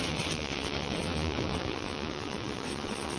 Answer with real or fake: fake